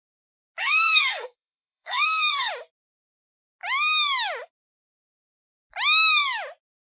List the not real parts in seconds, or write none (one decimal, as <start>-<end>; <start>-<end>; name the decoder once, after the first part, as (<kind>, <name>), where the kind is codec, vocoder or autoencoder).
0.6-2.5 (codec, SNAC)